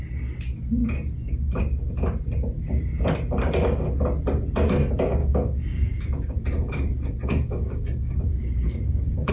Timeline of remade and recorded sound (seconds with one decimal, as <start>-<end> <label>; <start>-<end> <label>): 0.0-0.8 recorded; 0.8-1.6 remade; 1.6-5.2 recorded; 5.2-9.3 remade